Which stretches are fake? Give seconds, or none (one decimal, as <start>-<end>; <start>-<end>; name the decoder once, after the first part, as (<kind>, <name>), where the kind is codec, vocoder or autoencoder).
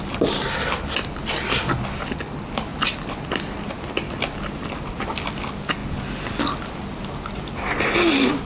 none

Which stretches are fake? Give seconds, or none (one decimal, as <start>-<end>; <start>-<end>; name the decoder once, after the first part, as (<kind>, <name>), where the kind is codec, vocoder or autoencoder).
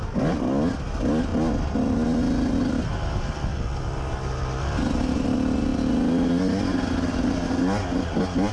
none